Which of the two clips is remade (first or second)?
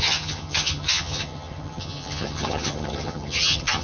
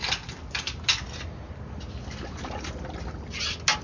first